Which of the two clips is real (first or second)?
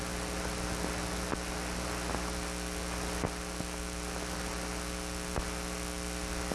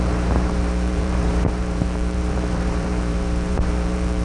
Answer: first